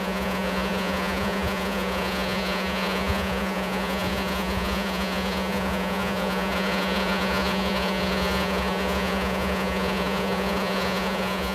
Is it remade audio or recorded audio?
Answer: remade